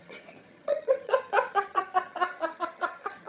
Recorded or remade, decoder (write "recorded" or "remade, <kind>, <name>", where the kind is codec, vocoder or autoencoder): remade, vocoder, HiFi-GAN